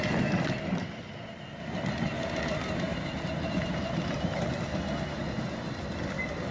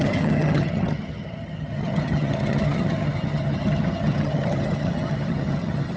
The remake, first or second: second